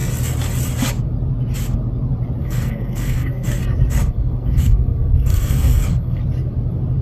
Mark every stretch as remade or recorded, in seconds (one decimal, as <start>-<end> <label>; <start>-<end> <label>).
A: 0.0-2.4 recorded; 2.4-3.6 remade; 3.6-4.0 recorded; 4.0-6.2 remade; 6.2-7.0 recorded